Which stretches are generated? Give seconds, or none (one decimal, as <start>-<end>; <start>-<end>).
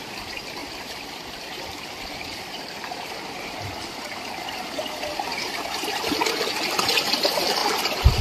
0.6-4.2; 5.3-6.1; 7.6-8.2